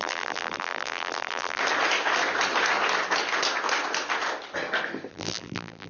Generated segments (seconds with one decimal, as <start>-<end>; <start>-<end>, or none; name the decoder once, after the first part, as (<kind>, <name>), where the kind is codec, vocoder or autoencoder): 0.0-1.6 (vocoder, BigVGAN v2); 5.1-5.9